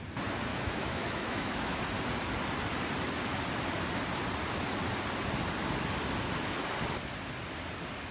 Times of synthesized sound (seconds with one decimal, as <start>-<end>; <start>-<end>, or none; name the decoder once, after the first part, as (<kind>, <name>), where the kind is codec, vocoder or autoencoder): 0.5-1.8 (autoencoder, DAC-VAE)